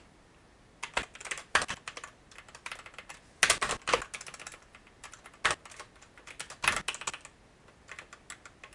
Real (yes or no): yes